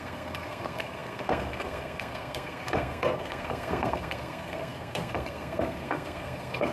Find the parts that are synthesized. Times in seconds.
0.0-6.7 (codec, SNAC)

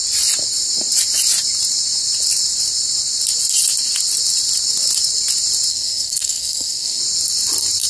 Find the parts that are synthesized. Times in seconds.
5.7-7.0 (codec, SNAC)

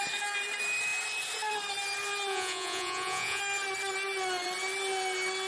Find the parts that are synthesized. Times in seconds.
2.3-3.4 (vocoder, Vocos)

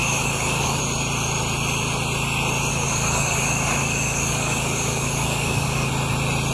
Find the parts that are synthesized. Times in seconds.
0.0-0.8 (codec, DAC); 2.7-5.9

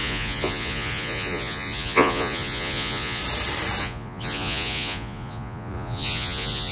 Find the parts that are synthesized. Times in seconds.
0.0-3.2 (vocoder, Vocos); 3.8-6.7